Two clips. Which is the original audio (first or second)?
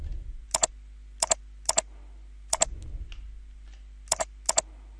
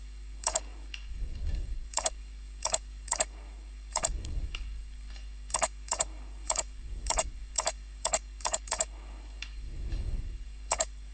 first